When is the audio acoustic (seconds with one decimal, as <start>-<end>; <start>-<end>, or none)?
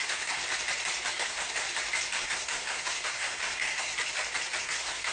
0.4-1.1; 1.6-2.2; 3.9-4.6